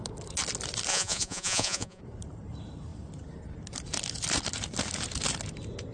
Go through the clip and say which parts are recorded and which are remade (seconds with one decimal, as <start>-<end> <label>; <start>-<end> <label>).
0.0-0.9 recorded; 0.9-2.0 remade; 2.0-5.9 recorded